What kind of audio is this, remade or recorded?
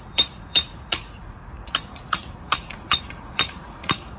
remade